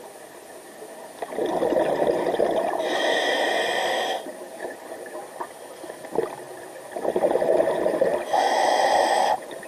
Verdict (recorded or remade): recorded